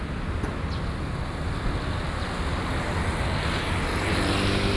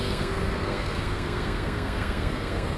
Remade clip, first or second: second